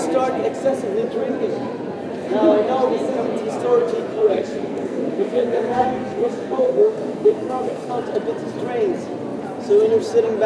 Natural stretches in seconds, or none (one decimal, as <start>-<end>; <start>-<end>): 0.0-4.1; 7.9-10.5